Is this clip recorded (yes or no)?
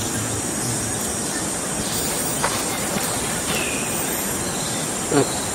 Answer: yes